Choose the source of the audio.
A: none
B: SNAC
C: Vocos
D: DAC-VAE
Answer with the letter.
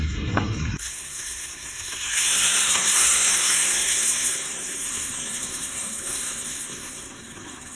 B